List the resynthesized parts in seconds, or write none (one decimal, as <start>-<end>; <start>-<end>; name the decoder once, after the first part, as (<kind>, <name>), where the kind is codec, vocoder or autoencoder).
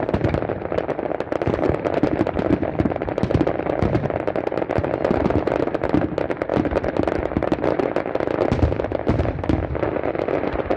none